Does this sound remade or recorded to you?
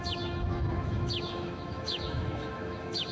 remade